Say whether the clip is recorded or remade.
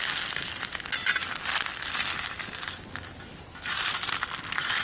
recorded